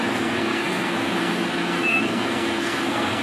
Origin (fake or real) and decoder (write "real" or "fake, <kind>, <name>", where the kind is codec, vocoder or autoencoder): fake, codec, SNAC